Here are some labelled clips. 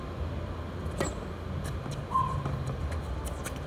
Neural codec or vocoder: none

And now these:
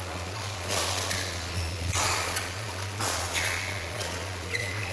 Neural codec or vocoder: vocoder, Vocos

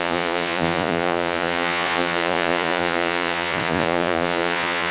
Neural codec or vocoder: vocoder, Vocos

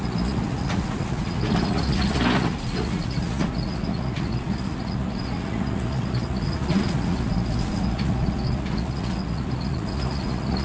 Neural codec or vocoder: vocoder, Vocos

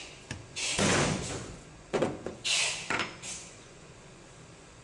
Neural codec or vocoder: vocoder, Vocos